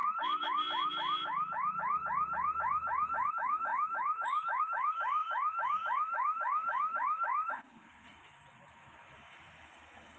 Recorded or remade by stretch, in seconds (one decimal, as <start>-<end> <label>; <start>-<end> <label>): 0.0-3.3 recorded; 3.3-10.2 remade